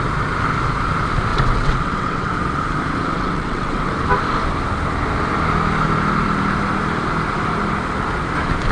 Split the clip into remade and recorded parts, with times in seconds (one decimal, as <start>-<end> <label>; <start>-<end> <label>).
0.0-1.3 recorded; 1.3-2.3 remade; 2.3-3.1 recorded; 3.1-3.9 remade; 3.9-8.7 recorded